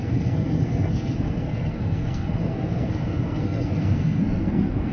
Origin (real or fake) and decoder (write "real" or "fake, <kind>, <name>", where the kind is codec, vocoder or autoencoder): fake, codec, SNAC